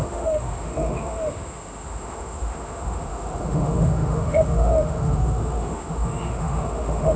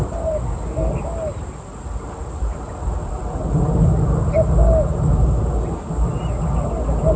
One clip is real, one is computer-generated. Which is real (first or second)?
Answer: second